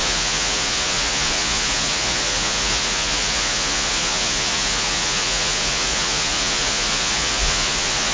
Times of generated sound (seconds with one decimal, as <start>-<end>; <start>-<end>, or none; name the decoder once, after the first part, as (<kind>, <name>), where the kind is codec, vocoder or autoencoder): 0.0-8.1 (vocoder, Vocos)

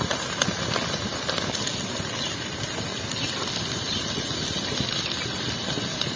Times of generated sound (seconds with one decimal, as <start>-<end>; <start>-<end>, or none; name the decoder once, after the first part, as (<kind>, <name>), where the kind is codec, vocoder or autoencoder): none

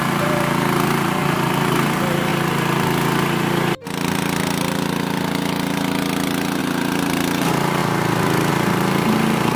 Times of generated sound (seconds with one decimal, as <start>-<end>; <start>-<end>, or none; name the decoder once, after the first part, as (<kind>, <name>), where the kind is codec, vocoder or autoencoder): 0.0-2.3 (vocoder, BigVGAN v2); 6.6-7.8; 8.5-9.6

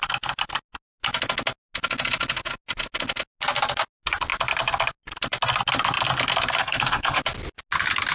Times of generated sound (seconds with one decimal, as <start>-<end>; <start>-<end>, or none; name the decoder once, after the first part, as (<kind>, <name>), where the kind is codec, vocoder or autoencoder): 6.6-7.2 (codec, SNAC)

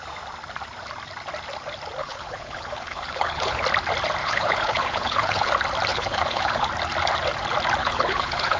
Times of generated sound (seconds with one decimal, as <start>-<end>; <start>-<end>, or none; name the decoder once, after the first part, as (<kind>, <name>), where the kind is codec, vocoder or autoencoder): 2.0-3.6 (codec, HILCodec); 4.2-5.5; 5.9-6.7; 7.8-8.6